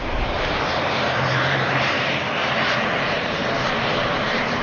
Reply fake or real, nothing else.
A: fake